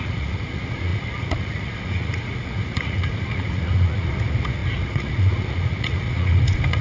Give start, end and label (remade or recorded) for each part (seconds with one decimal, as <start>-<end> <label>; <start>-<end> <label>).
0.0-6.8 remade